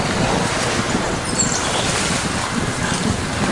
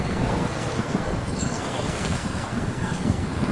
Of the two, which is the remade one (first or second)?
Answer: second